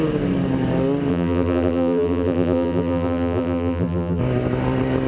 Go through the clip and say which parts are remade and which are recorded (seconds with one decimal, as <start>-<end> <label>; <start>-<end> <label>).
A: 0.0-1.1 recorded; 1.1-4.2 remade; 4.2-5.1 recorded